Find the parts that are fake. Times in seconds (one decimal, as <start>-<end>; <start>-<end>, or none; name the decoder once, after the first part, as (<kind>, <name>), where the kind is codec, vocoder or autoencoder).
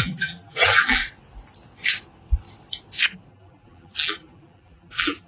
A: 0.0-1.0 (vocoder, BigVGAN v2); 3.3-5.3